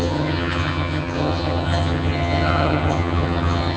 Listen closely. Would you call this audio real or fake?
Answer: fake